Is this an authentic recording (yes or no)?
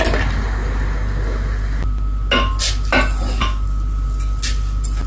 yes